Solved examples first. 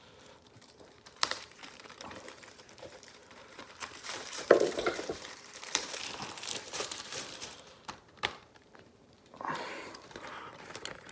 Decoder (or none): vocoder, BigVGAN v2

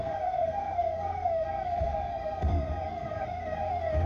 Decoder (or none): codec, SNAC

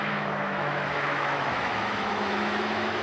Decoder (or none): autoencoder, DAC-VAE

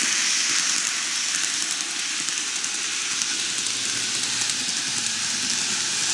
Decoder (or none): none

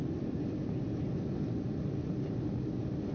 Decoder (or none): none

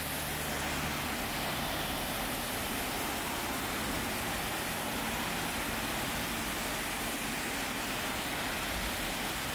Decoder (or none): none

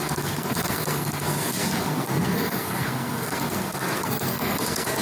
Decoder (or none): codec, SNAC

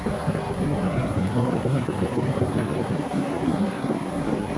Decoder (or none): codec, SNAC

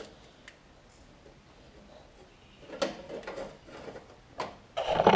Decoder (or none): none